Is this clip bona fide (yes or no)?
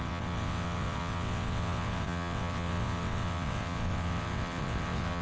no